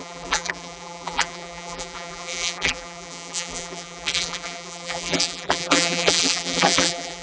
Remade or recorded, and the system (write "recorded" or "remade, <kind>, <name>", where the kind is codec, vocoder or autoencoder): remade, vocoder, BigVGAN v2